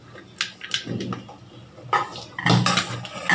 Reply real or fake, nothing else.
real